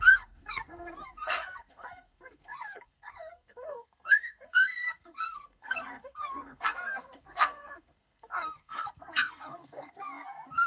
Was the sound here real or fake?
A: fake